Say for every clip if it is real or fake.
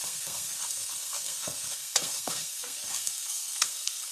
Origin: fake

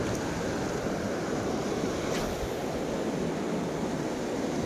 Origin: real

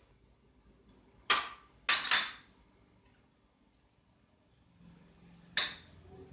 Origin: real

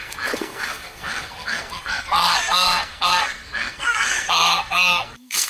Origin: fake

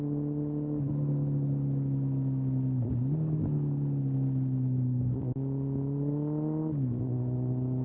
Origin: real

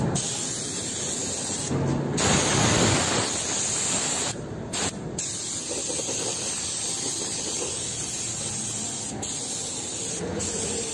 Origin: real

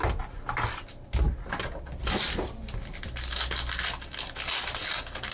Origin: real